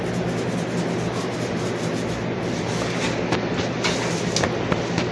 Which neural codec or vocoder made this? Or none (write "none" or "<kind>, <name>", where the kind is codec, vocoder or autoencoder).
none